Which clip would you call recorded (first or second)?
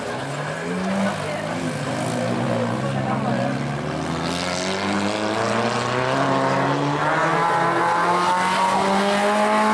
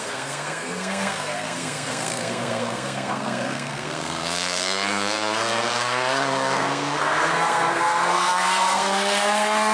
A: first